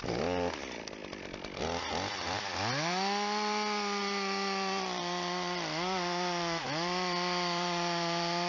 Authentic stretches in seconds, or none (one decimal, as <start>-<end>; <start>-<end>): none

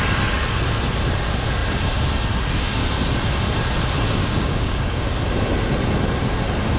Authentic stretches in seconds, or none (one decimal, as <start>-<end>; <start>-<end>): 0.0-4.2; 5.0-6.8

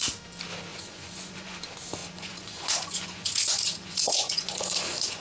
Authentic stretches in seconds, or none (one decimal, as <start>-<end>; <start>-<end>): 0.0-0.7; 1.6-2.0

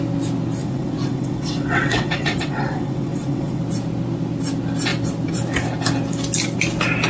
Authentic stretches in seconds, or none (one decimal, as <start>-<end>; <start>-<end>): 0.0-0.6; 3.6-7.1

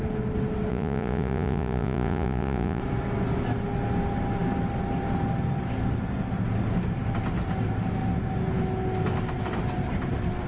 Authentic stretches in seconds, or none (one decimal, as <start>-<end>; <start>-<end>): 0.0-0.7; 2.8-10.5